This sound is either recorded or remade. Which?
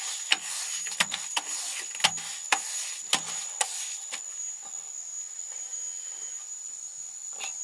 recorded